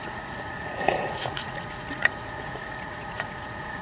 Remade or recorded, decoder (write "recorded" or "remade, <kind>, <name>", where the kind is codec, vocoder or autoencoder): remade, vocoder, Vocos